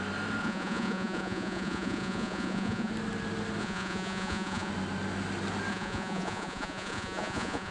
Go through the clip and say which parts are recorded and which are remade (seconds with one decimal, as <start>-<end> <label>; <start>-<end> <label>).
0.0-0.4 recorded; 0.4-2.9 remade; 2.9-3.6 recorded; 3.6-4.7 remade; 4.7-5.7 recorded; 5.7-7.7 remade

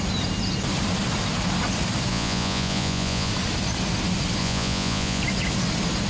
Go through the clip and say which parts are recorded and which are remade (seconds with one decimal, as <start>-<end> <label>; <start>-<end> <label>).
0.0-2.1 recorded; 2.1-3.3 remade; 3.3-4.4 recorded; 4.4-5.2 remade; 5.2-6.1 recorded

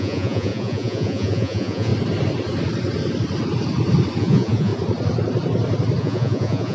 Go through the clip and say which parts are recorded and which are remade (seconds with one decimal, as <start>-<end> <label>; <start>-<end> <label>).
0.0-1.9 remade; 1.9-4.2 recorded; 4.2-4.7 remade; 4.7-6.0 recorded; 6.0-6.7 remade

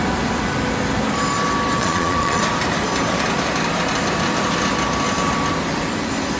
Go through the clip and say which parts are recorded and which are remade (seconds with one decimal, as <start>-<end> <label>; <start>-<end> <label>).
0.0-1.8 recorded; 1.8-2.4 remade; 2.4-6.4 recorded

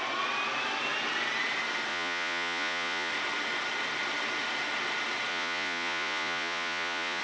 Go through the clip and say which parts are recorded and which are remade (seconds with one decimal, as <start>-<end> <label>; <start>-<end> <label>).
0.0-1.9 recorded; 1.9-3.1 remade; 3.1-5.3 recorded; 5.3-7.2 remade